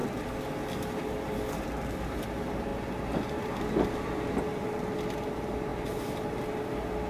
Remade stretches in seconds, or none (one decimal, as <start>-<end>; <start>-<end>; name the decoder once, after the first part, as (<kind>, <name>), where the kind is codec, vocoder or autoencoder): none